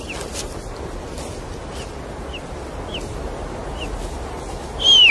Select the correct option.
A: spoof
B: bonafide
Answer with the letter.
B